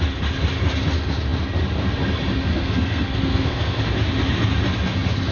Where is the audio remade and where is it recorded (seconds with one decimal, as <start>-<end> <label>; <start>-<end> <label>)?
0.0-2.5 recorded; 2.5-3.8 remade; 3.8-5.3 recorded